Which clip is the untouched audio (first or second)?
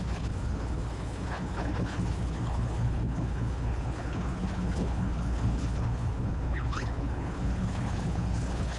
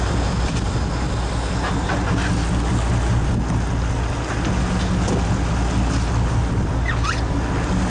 second